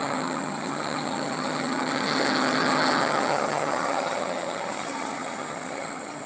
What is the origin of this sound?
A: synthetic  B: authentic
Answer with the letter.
A